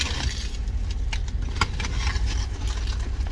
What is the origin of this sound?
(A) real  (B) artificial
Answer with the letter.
A